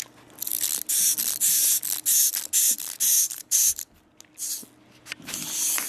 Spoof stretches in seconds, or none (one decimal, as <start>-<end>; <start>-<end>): 3.1-3.8